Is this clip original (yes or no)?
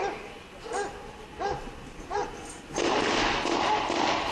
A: yes